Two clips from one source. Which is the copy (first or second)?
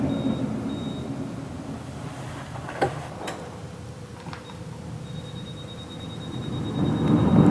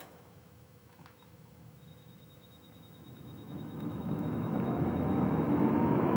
second